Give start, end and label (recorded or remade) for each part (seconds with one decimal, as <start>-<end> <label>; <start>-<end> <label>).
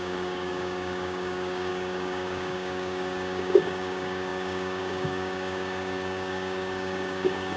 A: 0.0-7.6 remade